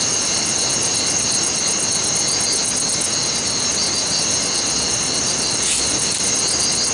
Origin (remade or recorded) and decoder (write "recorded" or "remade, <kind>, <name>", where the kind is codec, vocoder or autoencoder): recorded